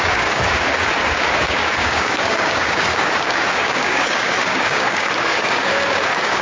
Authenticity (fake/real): fake